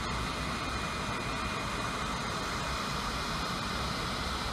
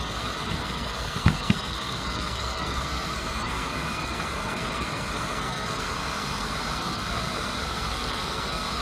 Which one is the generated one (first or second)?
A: second